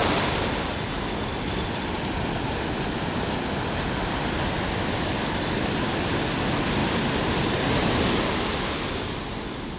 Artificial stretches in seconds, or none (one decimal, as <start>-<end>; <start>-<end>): 0.0-0.8; 6.8-8.0